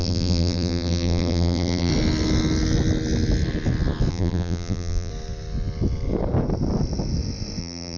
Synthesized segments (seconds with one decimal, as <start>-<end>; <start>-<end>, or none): 0.0-1.9; 4.1-5.1; 7.6-8.0